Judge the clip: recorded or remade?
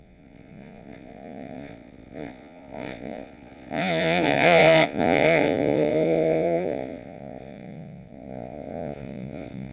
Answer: remade